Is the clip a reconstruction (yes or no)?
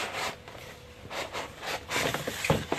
no